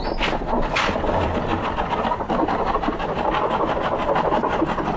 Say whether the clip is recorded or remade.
recorded